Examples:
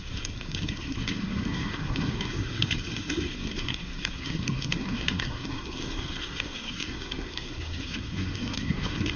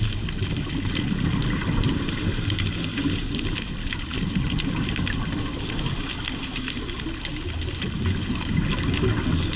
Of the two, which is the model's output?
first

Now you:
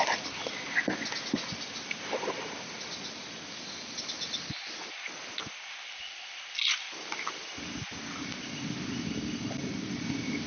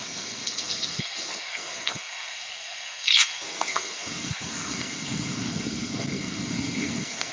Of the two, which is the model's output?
second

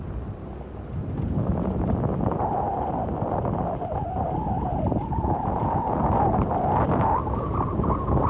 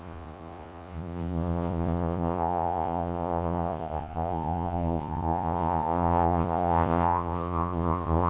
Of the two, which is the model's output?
second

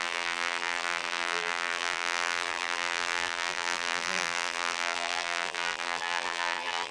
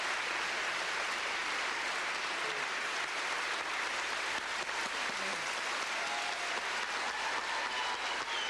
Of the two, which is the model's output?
first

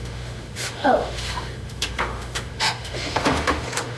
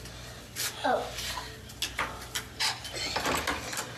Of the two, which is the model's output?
first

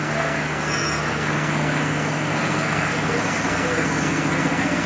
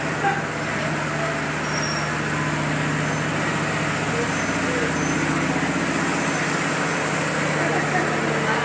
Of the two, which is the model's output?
first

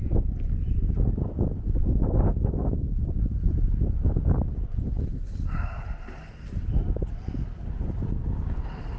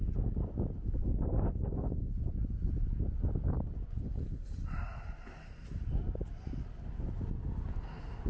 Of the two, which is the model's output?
first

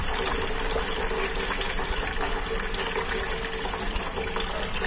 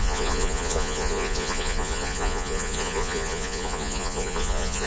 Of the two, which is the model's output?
second